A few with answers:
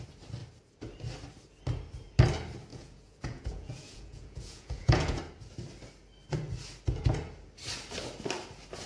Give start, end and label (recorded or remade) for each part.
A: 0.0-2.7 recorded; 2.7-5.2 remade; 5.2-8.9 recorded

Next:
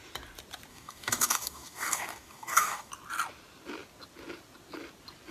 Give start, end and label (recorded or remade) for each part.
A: 0.0-0.7 recorded; 0.7-2.9 remade; 2.9-5.3 recorded

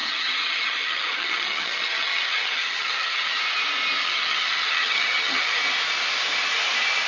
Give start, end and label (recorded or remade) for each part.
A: 0.0-3.4 remade; 3.4-4.0 recorded; 4.0-5.6 remade; 5.6-7.1 recorded

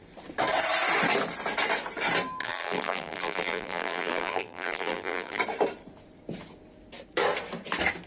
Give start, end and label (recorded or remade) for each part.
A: 0.0-2.4 recorded; 2.4-5.4 remade; 5.4-8.1 recorded